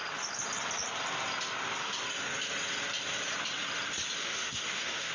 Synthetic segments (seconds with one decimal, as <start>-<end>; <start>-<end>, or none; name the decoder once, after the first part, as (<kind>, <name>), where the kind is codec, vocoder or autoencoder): 4.2-5.1 (autoencoder, DAC-VAE)